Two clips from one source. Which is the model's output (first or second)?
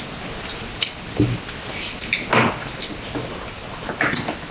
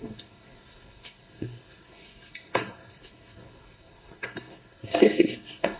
second